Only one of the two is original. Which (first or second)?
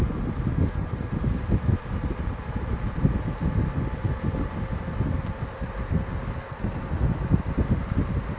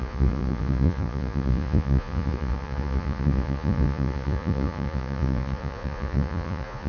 first